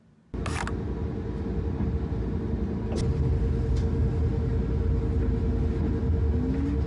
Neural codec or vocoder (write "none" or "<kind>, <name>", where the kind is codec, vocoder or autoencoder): none